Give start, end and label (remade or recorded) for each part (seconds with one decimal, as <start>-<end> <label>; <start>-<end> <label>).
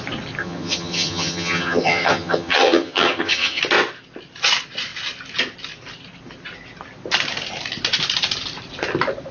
0.0-0.4 recorded; 0.4-3.6 remade; 3.6-9.3 recorded